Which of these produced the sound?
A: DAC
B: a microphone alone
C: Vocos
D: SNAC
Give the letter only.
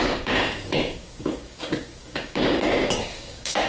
A